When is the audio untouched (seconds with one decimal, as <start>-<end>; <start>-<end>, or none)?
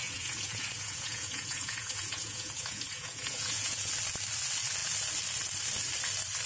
3.9-6.5